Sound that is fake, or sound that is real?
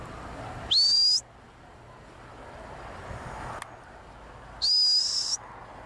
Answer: real